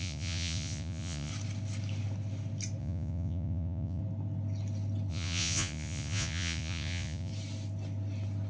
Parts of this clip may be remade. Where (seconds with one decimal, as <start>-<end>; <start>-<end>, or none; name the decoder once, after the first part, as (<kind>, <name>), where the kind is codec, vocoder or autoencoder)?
0.0-1.3 (vocoder, Vocos); 2.8-4.0; 5.1-7.3